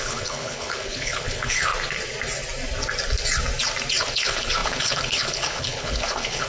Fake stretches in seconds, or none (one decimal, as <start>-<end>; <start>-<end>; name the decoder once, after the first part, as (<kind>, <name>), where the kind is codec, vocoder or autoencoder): 0.0-1.7 (codec, HILCodec); 4.1-6.5